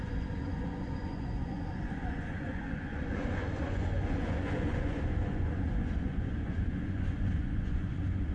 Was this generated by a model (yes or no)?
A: yes